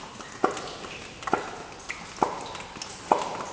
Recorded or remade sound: recorded